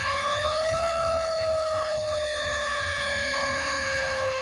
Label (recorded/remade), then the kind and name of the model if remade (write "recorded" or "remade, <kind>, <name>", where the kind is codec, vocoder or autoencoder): remade, codec, HILCodec